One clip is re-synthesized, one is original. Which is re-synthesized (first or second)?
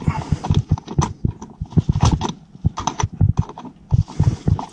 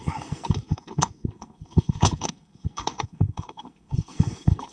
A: second